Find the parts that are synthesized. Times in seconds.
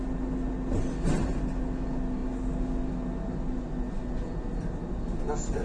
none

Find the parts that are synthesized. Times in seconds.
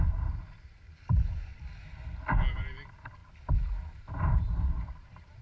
0.0-1.5; 2.5-5.4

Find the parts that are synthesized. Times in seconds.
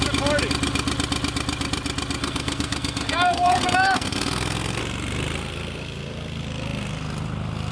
2.2-4.8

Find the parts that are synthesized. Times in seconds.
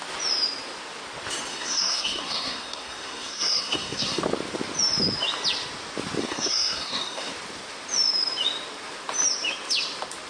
1.5-4.2; 6.2-7.3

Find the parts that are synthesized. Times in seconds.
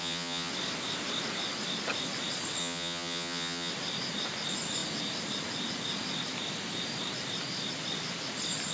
0.0-0.5; 2.6-3.7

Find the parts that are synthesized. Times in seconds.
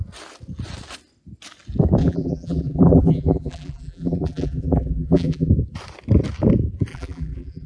2.0-5.5; 6.9-7.7